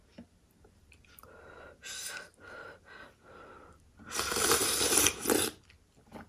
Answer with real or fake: real